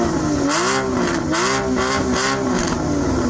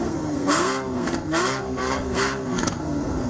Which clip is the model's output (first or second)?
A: second